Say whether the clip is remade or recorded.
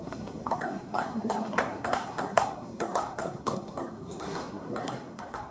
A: remade